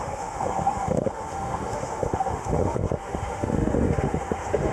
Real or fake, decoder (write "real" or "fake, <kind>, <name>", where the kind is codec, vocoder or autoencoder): fake, autoencoder, DAC-VAE